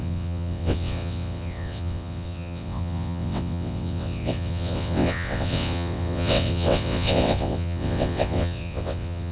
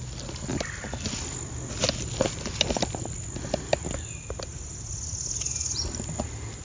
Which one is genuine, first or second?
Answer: second